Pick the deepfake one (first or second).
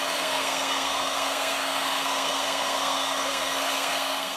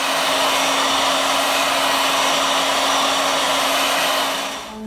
first